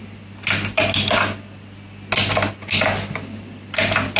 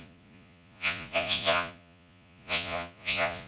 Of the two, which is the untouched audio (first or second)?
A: first